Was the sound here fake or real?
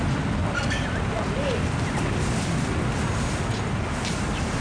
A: real